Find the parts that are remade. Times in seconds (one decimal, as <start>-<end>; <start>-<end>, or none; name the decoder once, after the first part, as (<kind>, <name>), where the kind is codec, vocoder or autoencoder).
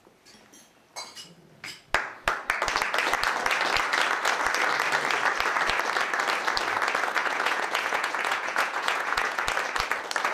7.2-9.4 (vocoder, Vocos)